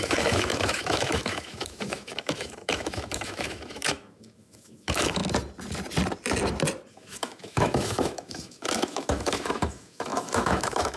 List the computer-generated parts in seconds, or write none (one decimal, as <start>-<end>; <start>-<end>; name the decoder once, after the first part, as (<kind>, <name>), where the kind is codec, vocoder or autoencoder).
0.0-5.2 (autoencoder, DAC-VAE); 6.9-11.0

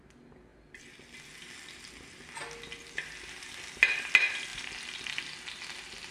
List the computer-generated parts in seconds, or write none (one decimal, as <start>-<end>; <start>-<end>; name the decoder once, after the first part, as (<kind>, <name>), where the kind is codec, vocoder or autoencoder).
none

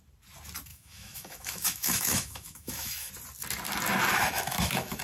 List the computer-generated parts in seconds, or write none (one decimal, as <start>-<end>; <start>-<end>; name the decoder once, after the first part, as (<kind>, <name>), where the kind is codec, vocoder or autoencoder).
0.7-3.1 (autoencoder, DAC-VAE); 4.1-5.0

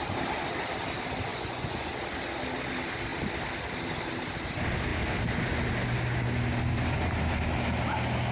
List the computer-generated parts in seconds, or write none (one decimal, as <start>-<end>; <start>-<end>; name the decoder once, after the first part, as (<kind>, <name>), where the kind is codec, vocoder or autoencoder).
1.3-1.9 (vocoder, Vocos)

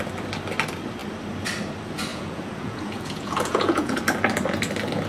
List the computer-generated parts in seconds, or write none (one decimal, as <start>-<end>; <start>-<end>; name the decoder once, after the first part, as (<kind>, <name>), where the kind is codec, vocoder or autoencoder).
2.1-4.0 (vocoder, Vocos)

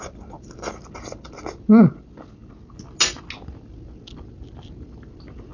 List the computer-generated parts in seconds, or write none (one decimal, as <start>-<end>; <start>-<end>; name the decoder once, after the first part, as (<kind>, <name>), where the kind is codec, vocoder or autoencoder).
none

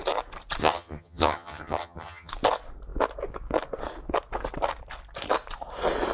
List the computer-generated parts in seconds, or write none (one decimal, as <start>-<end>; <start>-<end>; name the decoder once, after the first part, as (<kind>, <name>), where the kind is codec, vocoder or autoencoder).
0.6-2.3 (vocoder, HiFi-GAN)

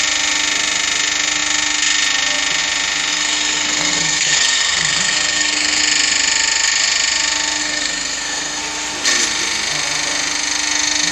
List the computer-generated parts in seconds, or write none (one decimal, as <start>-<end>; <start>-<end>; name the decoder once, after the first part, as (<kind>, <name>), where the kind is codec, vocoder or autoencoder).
3.1-5.8 (codec, SNAC); 7.6-8.6